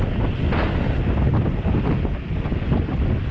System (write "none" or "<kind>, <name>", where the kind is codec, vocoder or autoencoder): none